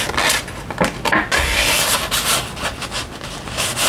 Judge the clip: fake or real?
real